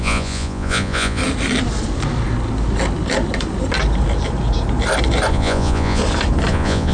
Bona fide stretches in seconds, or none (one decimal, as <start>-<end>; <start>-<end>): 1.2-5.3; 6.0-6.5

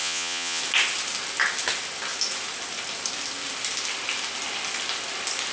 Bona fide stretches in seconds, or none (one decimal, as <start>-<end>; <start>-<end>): 0.6-5.5

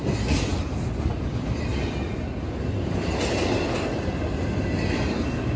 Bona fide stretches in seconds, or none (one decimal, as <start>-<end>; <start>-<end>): 0.0-0.5; 1.1-5.6

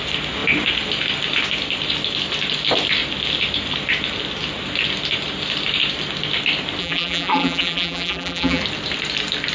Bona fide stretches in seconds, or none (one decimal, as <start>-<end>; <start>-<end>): 0.0-6.8; 8.6-9.5